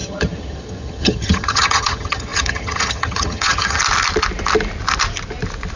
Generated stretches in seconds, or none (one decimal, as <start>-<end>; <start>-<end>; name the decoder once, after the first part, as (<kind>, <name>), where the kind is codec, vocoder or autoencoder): 0.0-3.8 (vocoder, HiFi-GAN)